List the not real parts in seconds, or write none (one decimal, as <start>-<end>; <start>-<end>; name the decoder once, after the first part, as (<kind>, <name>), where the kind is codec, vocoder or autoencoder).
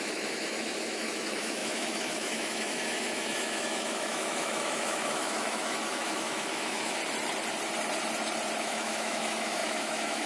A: 0.0-7.0 (autoencoder, DAC-VAE); 8.6-10.3